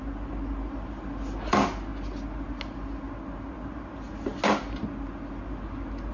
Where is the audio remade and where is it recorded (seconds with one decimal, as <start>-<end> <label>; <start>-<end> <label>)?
0.0-6.1 recorded